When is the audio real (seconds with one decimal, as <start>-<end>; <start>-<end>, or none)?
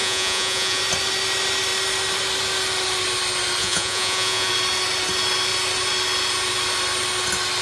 0.8-3.6; 4.5-7.6